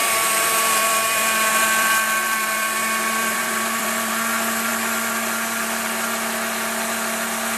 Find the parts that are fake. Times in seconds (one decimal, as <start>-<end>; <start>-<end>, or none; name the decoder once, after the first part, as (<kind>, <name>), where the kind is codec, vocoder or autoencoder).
0.0-4.1 (vocoder, BigVGAN v2)